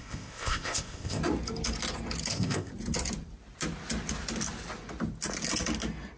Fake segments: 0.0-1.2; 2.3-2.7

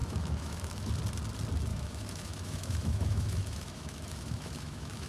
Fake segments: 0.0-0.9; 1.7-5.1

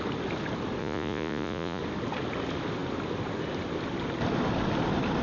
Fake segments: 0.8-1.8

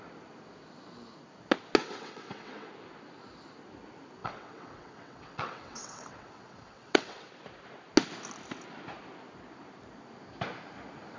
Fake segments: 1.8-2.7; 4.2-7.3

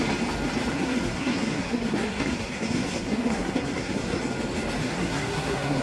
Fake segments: 0.7-4.2; 4.8-5.8

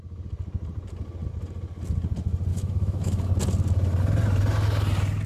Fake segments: 2.5-3.3

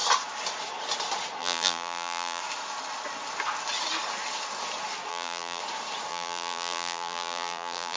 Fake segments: 1.4-2.4; 5.1-5.6; 6.1-8.0